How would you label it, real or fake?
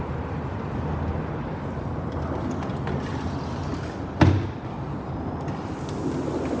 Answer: real